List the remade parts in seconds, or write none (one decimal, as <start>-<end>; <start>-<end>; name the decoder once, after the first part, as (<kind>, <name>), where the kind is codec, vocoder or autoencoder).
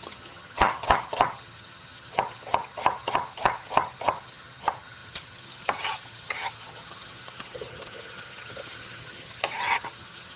0.0-10.4 (vocoder, HiFi-GAN)